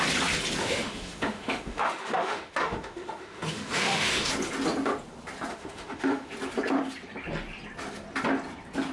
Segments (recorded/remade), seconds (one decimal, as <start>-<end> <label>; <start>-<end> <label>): 0.0-0.6 recorded; 0.6-4.3 remade; 4.3-5.5 recorded; 5.5-6.3 remade; 6.3-8.9 recorded